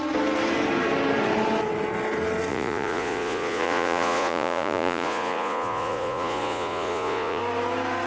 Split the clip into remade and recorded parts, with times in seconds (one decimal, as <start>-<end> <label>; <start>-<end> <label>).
0.0-2.5 recorded; 2.5-7.4 remade; 7.4-8.1 recorded